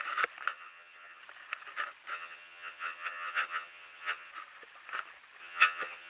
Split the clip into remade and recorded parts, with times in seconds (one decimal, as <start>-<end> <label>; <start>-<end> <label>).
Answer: 0.0-0.5 recorded; 0.5-1.2 remade; 1.2-2.1 recorded; 2.1-4.3 remade; 4.3-5.4 recorded; 5.4-6.1 remade

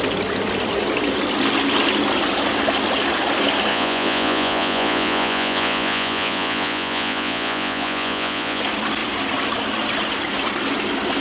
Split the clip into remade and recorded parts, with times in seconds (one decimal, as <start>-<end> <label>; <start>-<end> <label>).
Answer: 0.0-3.7 recorded; 3.7-8.6 remade; 8.6-11.2 recorded

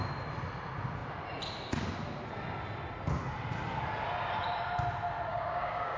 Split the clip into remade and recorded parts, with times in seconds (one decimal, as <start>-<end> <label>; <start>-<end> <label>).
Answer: 0.0-5.3 recorded; 5.3-6.0 remade

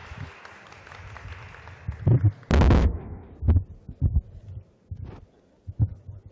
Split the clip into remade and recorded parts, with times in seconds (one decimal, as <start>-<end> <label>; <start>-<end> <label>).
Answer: 0.0-2.8 recorded; 2.8-3.3 remade; 3.3-6.3 recorded

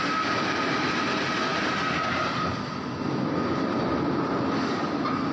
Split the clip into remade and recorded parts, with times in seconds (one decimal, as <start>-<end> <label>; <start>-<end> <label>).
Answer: 0.0-5.3 recorded